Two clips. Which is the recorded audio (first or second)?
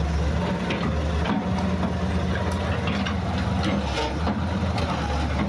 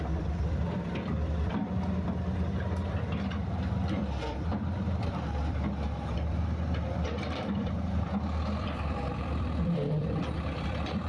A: first